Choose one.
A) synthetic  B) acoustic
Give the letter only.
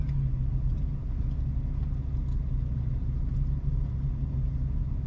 B